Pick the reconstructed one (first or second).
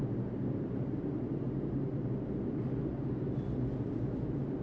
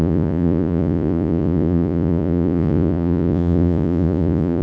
second